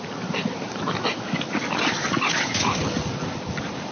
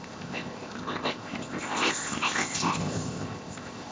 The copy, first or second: second